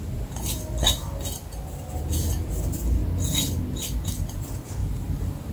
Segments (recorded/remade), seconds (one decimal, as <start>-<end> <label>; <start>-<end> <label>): 0.0-4.8 recorded; 4.8-5.5 remade